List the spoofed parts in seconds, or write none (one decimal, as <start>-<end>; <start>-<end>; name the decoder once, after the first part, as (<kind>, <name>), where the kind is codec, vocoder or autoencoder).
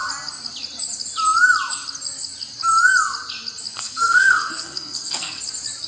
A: 3.7-5.4 (codec, SNAC)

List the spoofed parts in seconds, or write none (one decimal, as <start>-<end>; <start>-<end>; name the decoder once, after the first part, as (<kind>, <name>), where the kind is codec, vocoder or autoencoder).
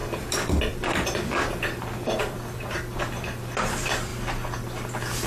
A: 0.0-4.1 (vocoder, BigVGAN v2)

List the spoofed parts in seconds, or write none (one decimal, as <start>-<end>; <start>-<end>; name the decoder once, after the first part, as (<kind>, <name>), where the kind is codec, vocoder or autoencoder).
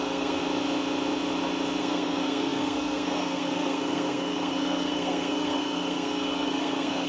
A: 0.0-0.4 (codec, SNAC); 1.8-7.1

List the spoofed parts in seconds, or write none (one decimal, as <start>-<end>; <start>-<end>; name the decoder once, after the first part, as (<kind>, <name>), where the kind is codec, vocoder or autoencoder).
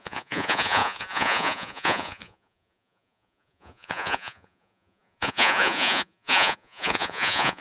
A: 0.0-7.6 (vocoder, Vocos)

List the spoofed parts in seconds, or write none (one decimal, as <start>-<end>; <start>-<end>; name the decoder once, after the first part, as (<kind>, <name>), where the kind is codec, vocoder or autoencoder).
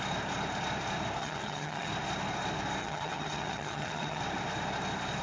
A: 1.2-1.9 (vocoder, HiFi-GAN); 2.8-4.2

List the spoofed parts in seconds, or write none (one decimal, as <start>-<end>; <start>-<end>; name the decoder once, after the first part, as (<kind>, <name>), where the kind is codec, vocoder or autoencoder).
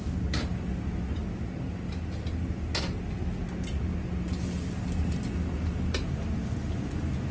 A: none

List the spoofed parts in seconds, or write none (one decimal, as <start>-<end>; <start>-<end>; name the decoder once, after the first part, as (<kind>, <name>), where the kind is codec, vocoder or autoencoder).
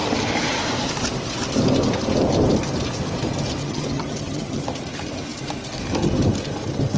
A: 3.6-4.6 (vocoder, HiFi-GAN)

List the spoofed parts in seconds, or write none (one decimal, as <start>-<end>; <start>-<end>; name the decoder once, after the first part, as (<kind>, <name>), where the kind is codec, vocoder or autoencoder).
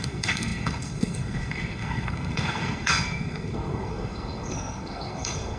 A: 0.0-5.6 (codec, SNAC)